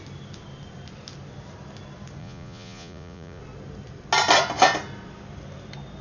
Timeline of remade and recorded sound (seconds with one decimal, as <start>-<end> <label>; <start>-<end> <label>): 0.0-2.2 recorded; 2.2-3.4 remade; 3.4-6.0 recorded